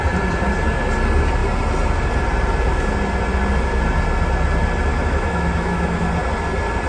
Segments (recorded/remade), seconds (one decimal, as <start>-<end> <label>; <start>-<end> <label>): 0.0-4.9 recorded; 4.9-6.1 remade; 6.1-6.9 recorded